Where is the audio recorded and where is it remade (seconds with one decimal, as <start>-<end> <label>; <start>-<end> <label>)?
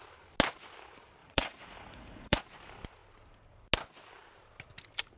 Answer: 0.0-1.2 recorded; 1.2-2.4 remade; 2.4-5.2 recorded